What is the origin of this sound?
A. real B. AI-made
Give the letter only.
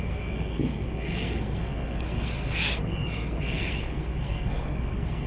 B